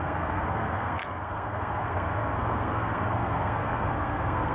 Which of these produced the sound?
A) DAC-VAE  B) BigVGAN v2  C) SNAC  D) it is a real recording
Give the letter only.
C